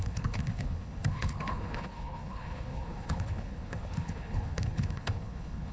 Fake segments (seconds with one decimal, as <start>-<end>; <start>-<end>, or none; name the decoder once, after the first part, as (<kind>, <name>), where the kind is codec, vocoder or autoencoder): 0.0-5.7 (codec, HILCodec)